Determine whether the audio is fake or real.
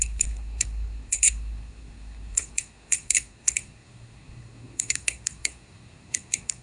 fake